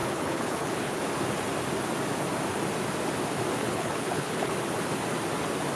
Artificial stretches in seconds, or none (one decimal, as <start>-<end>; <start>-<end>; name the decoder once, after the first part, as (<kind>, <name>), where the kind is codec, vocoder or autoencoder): 0.0-1.0 (codec, HILCodec); 3.6-4.5